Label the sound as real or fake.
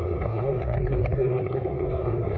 fake